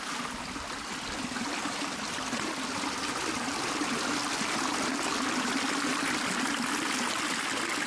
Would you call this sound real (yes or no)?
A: yes